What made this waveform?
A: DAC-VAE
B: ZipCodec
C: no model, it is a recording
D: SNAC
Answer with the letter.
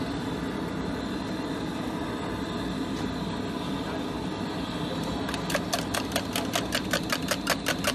C